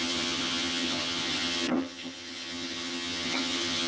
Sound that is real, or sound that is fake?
fake